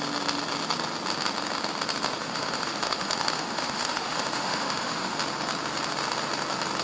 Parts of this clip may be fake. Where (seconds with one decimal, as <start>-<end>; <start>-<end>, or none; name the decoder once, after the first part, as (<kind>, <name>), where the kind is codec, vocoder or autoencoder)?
2.1-5.2 (autoencoder, DAC-VAE)